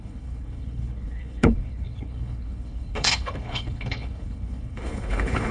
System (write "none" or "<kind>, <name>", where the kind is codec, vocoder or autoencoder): codec, HILCodec